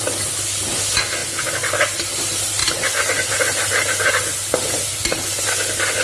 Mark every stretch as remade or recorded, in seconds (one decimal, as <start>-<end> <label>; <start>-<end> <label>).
0.0-6.0 recorded